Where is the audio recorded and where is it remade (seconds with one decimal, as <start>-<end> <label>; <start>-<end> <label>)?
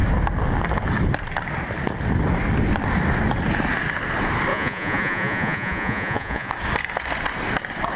0.0-4.5 recorded; 4.5-6.5 remade; 6.5-8.0 recorded